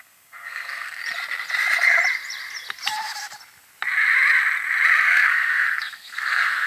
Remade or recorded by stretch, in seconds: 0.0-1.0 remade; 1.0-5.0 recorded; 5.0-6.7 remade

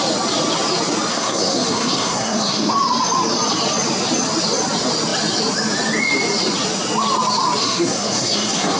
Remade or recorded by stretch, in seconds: 0.0-1.1 recorded; 1.1-2.7 remade; 2.7-7.6 recorded; 7.6-8.8 remade

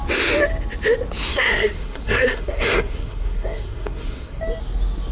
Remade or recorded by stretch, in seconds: 0.0-1.3 recorded; 1.3-4.4 remade; 4.4-5.1 recorded

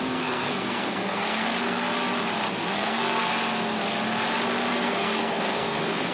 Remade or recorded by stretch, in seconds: 0.0-1.9 remade; 1.9-2.7 recorded; 2.7-3.3 remade; 3.3-4.7 recorded; 4.7-6.1 remade

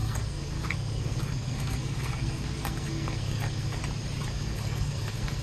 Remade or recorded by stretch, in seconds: 0.0-3.8 remade; 3.8-4.3 recorded; 4.3-5.4 remade